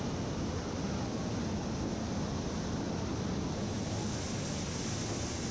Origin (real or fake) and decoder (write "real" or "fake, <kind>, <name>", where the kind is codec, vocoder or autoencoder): real